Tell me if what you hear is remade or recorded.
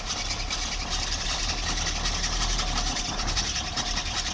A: remade